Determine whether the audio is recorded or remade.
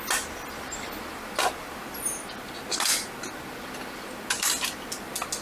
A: recorded